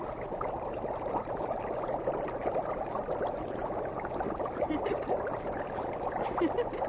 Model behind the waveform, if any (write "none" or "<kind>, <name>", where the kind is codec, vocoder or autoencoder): none